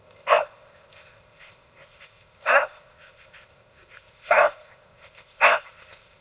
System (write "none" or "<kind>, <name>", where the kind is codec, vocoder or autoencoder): codec, ZipCodec